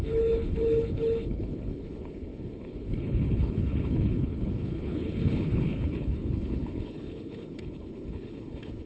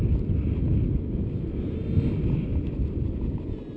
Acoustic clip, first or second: second